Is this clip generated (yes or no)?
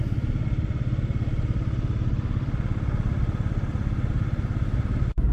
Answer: no